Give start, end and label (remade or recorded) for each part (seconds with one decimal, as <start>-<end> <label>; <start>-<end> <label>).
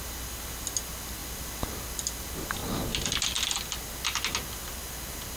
0.0-5.4 recorded